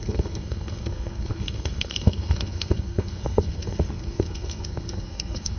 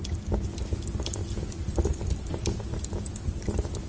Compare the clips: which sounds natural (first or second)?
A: second